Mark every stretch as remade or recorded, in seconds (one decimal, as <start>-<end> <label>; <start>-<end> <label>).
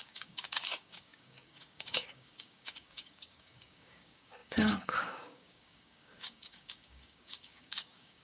0.0-8.2 remade